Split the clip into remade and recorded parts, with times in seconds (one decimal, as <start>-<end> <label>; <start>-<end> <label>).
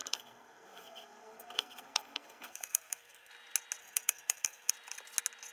0.0-3.3 remade; 3.3-3.8 recorded; 3.8-4.7 remade; 4.7-5.5 recorded